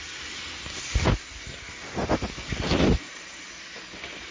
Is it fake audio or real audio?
real